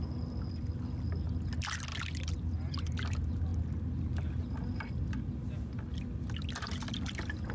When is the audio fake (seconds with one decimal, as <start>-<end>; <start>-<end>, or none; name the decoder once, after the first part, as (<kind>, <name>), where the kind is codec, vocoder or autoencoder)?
none